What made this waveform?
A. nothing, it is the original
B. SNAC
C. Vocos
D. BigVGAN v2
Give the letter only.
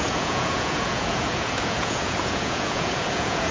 C